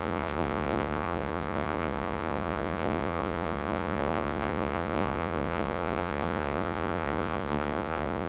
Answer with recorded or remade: remade